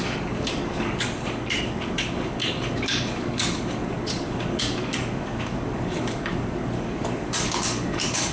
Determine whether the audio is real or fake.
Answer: fake